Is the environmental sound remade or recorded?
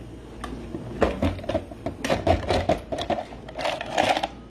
recorded